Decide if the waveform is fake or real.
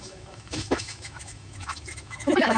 fake